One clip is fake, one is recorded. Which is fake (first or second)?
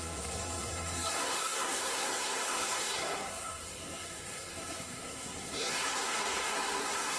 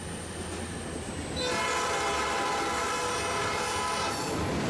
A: first